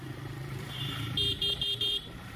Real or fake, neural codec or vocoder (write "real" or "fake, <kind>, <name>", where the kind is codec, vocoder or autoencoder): fake, vocoder, BigVGAN v2